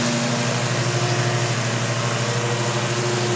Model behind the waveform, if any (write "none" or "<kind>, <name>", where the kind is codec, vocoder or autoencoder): none